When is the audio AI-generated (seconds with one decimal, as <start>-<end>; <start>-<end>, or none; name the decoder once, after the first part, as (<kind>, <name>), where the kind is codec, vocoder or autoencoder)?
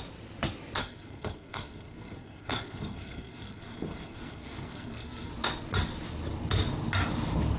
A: 0.8-5.3 (codec, SNAC)